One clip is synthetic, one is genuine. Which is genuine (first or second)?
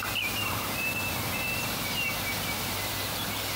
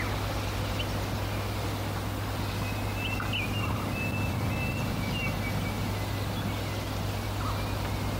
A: second